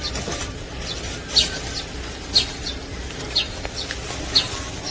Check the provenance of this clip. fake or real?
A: real